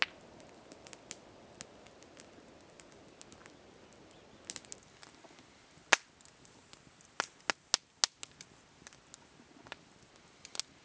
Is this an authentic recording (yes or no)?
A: yes